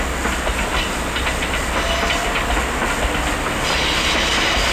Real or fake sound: real